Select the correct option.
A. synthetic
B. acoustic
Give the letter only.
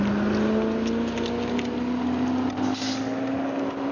B